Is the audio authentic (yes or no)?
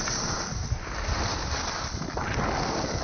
yes